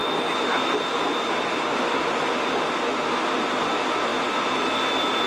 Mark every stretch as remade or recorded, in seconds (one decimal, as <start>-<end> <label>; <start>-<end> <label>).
0.0-5.3 recorded